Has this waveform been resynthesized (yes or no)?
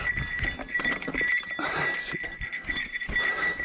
no